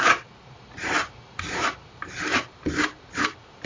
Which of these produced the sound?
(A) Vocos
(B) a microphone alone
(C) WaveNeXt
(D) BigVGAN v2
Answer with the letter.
D